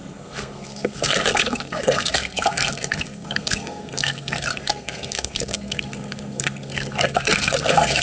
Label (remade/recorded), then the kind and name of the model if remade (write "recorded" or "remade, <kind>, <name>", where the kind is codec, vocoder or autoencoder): remade, codec, SNAC